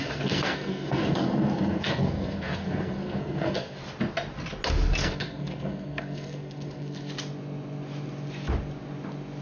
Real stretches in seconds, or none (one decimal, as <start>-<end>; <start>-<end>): 3.8-5.0; 7.1-9.4